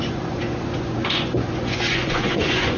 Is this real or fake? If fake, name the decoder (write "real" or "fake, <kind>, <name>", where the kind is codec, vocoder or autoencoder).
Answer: fake, vocoder, Vocos